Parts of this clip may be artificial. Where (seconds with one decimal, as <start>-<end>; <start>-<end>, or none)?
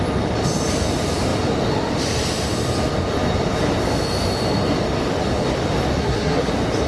6.0-6.5